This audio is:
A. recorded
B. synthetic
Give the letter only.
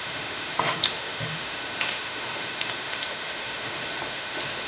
B